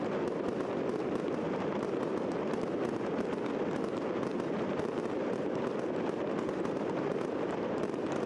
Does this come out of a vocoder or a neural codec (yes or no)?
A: no